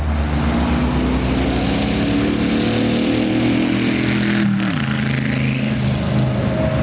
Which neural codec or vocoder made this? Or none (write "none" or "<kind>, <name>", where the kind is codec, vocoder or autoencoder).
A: none